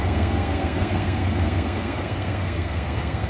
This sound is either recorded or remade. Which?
remade